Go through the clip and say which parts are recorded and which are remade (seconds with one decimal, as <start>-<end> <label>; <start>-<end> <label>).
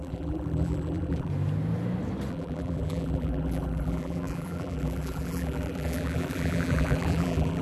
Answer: 0.0-1.3 remade; 1.3-2.3 recorded; 2.3-7.6 remade